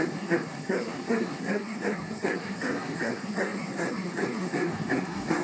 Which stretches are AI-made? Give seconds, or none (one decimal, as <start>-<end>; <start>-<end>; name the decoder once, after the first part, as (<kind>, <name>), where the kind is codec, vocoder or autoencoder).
0.0-5.4 (codec, SNAC)